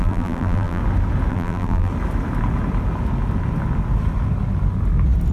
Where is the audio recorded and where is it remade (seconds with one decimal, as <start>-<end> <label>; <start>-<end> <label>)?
0.0-0.8 remade; 0.8-1.3 recorded; 1.3-1.9 remade; 1.9-5.3 recorded